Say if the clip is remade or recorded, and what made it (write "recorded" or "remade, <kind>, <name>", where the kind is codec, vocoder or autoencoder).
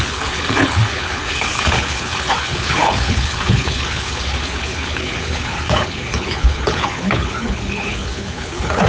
remade, codec, HILCodec